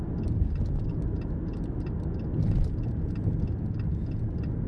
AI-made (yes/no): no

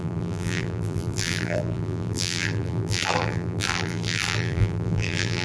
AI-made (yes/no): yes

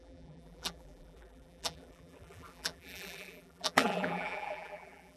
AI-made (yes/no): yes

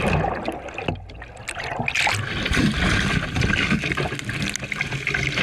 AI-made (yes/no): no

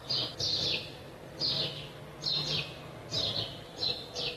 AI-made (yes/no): no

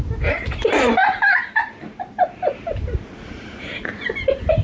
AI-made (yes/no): yes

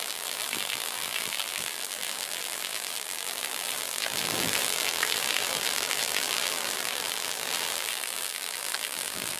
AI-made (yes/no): yes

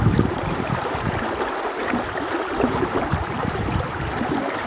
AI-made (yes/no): yes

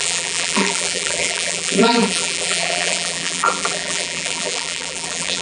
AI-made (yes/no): yes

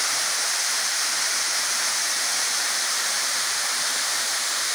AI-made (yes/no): yes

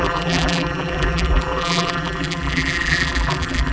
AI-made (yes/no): yes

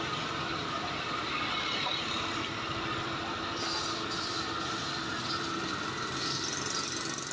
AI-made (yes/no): no